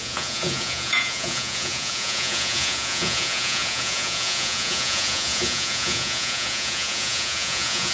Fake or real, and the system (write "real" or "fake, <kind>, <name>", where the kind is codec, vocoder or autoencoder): fake, vocoder, Vocos